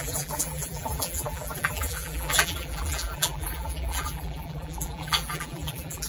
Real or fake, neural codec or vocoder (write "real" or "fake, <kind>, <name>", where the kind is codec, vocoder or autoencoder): fake, vocoder, BigVGAN v2